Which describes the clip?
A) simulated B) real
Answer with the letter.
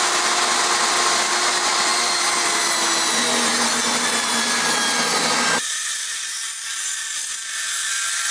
B